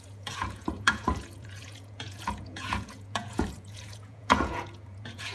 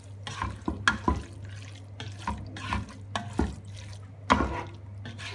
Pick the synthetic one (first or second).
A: first